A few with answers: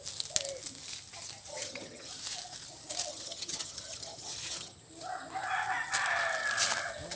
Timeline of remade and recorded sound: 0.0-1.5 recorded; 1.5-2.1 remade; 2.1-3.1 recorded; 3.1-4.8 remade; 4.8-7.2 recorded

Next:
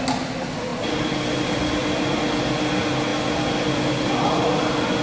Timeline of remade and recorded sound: 0.0-5.0 recorded

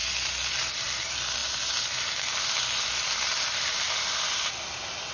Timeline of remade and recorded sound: 0.0-5.1 recorded

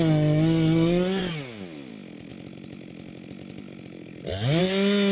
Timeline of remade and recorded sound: 0.0-5.1 recorded